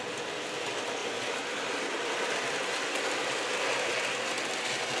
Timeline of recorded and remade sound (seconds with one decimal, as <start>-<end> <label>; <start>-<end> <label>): 0.0-1.0 recorded; 1.0-4.0 remade; 4.0-5.0 recorded